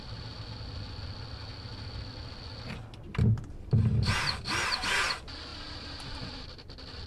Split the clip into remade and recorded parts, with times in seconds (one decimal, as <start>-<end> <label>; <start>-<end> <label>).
0.0-5.5 recorded; 5.5-7.1 remade

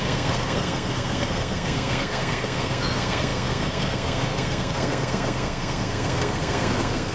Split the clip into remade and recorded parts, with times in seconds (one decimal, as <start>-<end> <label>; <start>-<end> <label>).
0.0-7.1 remade